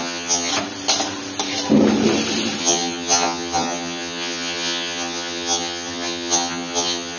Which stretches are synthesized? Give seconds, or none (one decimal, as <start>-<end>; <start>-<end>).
0.0-0.5; 2.6-7.2